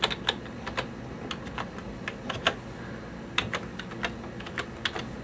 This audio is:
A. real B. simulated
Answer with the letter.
A